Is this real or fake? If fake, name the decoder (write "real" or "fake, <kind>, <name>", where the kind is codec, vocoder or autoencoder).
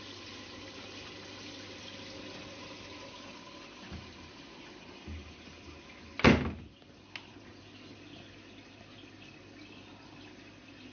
real